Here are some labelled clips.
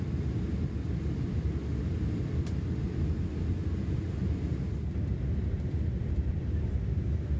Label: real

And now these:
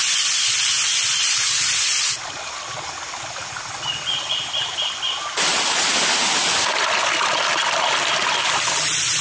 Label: real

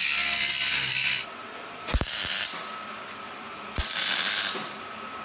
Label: fake